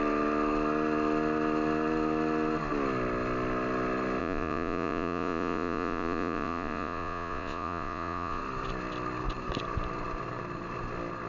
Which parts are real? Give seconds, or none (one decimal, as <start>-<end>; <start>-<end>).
0.0-4.2; 8.4-11.3